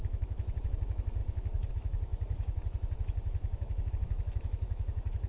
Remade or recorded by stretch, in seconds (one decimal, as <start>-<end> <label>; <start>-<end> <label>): 0.0-5.3 remade